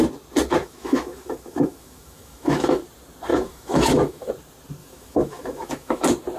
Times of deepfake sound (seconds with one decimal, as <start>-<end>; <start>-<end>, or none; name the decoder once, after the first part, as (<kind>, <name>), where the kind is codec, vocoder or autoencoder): 0.6-2.8 (autoencoder, DAC-VAE); 3.3-4.3; 4.8-6.0